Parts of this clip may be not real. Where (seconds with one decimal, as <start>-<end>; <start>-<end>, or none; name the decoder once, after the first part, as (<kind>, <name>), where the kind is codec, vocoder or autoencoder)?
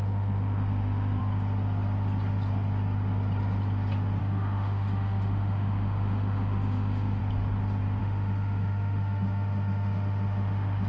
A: 0.0-1.2 (autoencoder, DAC-VAE); 4.2-7.2; 8.0-10.9